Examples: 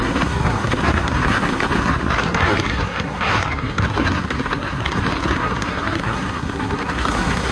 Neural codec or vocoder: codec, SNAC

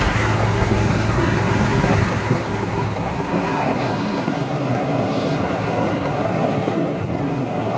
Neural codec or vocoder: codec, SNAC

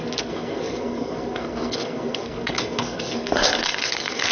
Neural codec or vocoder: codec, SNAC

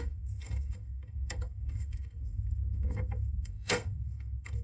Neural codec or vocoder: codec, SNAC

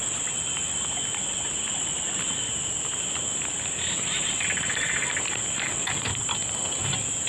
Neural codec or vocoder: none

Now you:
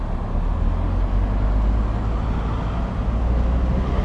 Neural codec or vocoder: none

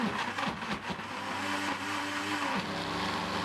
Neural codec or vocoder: none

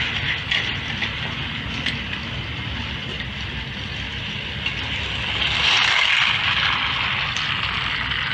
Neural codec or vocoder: none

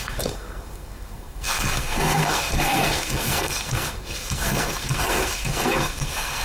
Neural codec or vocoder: codec, SNAC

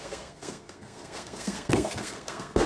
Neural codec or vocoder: codec, SNAC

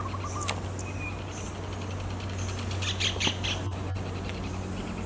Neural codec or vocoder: none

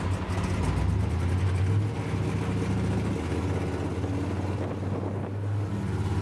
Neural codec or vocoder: none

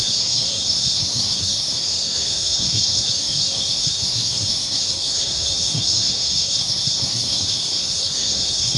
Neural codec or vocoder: codec, SNAC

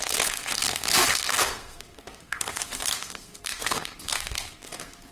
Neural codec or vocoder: codec, SNAC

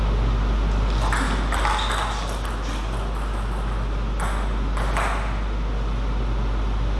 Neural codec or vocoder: none